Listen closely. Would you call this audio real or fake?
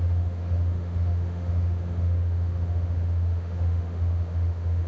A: fake